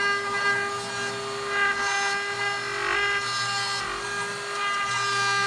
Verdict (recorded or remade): recorded